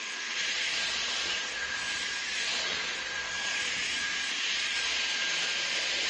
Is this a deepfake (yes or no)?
yes